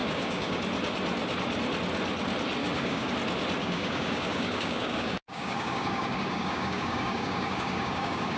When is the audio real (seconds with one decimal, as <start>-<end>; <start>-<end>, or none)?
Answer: 0.6-2.6; 3.1-3.6